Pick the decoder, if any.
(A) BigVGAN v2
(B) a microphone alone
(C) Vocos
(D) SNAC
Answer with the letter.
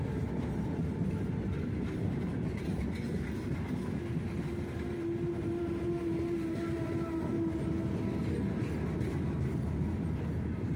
B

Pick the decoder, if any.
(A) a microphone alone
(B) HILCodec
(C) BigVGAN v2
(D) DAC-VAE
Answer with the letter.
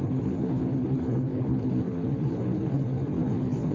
B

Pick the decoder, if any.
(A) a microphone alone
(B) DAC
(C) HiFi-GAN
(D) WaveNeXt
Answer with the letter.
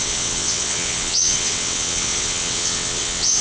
D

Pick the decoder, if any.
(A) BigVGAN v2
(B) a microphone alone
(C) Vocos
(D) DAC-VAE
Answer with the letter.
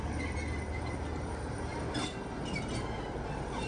B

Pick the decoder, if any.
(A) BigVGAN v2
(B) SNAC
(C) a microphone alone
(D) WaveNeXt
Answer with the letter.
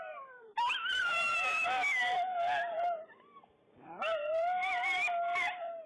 A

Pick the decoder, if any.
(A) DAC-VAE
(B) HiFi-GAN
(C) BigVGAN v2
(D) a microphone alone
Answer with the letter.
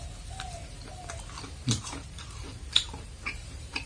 C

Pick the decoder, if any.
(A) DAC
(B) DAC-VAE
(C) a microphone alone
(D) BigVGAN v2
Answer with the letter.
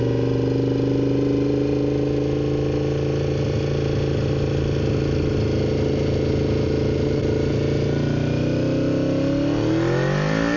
C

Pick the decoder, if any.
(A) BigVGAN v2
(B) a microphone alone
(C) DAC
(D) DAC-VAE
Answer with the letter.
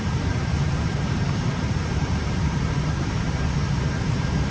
A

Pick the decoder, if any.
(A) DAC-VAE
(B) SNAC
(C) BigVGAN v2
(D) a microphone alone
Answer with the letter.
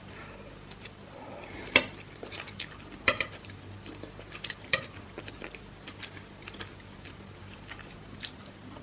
C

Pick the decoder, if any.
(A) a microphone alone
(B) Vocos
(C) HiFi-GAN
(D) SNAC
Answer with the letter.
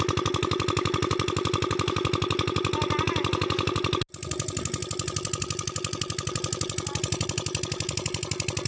A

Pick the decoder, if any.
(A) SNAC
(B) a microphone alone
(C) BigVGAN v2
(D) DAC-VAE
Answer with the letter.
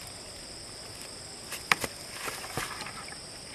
B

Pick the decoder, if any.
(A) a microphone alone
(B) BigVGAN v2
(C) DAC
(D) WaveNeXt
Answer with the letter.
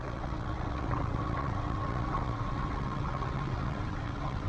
D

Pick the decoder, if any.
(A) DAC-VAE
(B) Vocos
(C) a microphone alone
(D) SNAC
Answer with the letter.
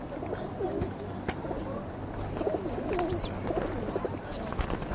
C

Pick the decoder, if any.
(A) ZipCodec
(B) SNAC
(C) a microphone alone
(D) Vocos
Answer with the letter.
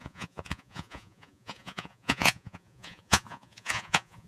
D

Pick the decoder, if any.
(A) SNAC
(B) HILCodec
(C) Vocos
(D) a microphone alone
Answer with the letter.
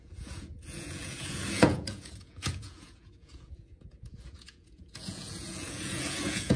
C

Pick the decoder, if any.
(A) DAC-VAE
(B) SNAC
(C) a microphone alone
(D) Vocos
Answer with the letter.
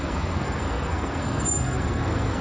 B